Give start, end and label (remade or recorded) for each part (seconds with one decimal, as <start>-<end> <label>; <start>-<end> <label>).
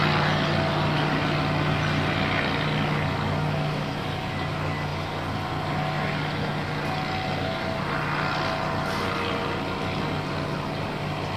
0.0-11.4 recorded